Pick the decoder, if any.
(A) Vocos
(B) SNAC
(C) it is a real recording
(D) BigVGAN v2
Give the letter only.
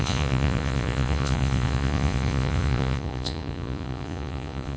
A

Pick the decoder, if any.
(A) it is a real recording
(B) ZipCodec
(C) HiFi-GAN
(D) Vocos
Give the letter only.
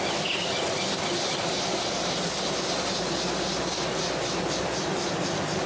A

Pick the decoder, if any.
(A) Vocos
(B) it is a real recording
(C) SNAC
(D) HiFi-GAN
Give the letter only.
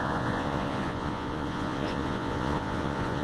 A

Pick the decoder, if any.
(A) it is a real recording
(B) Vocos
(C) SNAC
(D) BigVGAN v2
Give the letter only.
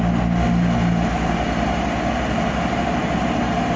A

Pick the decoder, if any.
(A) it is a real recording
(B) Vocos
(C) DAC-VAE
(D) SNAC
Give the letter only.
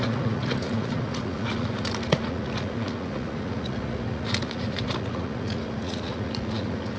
B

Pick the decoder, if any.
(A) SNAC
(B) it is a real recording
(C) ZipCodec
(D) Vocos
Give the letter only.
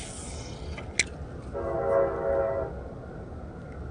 B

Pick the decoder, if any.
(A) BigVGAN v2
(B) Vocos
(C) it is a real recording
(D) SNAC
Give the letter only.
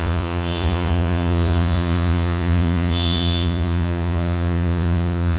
B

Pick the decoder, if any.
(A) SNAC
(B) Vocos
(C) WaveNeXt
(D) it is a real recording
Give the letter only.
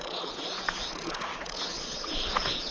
B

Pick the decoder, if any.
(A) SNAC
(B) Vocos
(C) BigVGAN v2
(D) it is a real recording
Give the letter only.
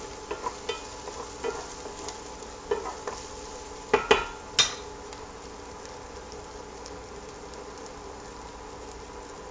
D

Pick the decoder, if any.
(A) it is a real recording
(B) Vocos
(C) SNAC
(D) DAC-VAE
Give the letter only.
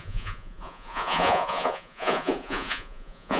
B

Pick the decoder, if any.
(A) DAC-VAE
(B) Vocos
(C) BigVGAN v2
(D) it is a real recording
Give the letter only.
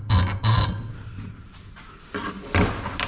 D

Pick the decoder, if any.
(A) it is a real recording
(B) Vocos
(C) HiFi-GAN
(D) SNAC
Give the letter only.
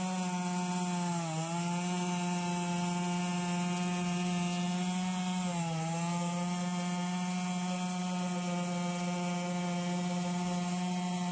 A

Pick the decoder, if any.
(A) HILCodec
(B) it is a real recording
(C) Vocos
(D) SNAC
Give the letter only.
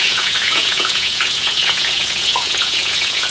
C